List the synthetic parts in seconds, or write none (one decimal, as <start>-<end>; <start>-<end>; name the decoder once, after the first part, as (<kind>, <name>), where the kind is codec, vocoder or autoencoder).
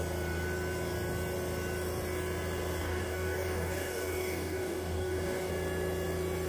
2.8-5.5 (codec, DAC)